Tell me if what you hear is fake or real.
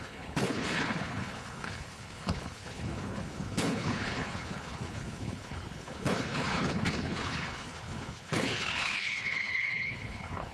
fake